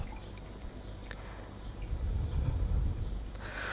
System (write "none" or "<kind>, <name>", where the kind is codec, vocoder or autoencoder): none